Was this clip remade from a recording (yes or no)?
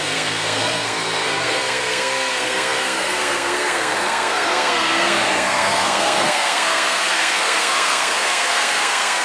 yes